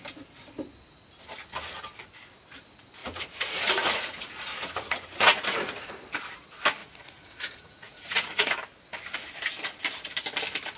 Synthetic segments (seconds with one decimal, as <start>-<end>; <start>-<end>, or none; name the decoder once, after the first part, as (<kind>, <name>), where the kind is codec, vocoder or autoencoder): 3.0-5.9 (vocoder, Vocos); 6.8-8.5